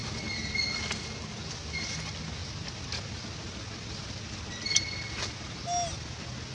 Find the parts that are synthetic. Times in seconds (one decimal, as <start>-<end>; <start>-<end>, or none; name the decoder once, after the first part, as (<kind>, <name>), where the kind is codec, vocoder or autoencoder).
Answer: none